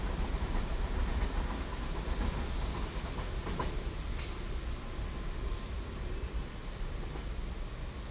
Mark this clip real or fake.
real